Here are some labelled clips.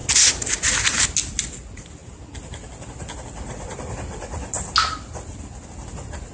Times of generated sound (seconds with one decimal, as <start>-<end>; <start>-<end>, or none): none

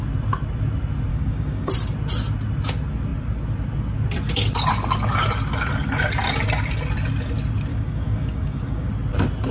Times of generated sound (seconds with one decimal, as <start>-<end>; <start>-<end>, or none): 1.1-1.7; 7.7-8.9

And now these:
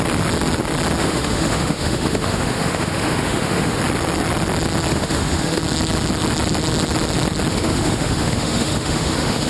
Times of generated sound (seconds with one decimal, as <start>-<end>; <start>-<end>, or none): 1.0-3.8; 4.9-5.6; 7.5-9.5

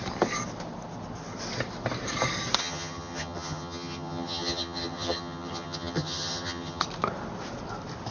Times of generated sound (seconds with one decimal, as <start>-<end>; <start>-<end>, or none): 2.6-6.8

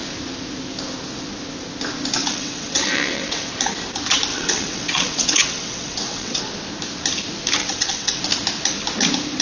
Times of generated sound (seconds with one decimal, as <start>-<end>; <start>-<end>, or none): 2.2-3.5; 4.3-6.4; 7.6-8.2

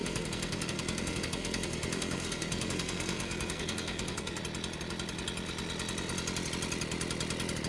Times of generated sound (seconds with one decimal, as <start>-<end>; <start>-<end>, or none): 0.0-4.4

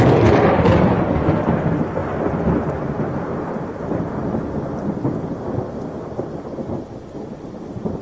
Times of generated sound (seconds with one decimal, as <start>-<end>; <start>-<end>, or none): 0.0-2.0; 6.8-8.0